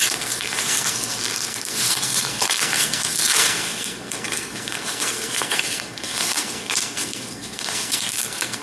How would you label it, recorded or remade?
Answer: remade